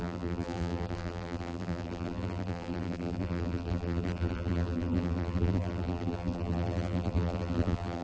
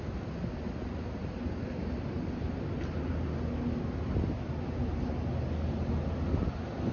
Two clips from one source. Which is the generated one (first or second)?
first